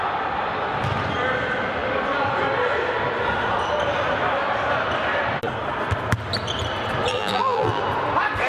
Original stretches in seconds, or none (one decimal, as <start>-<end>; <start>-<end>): 0.0-7.1; 7.8-8.5